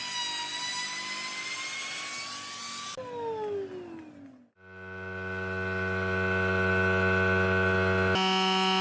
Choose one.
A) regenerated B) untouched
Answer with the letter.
B